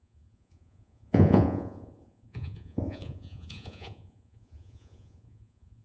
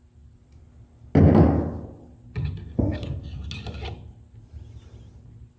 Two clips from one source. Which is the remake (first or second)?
first